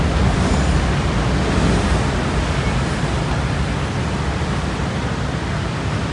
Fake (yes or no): no